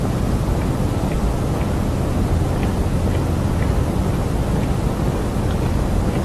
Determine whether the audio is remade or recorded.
recorded